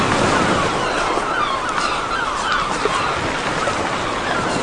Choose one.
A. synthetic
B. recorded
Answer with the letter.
B